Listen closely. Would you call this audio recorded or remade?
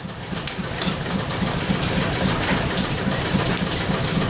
recorded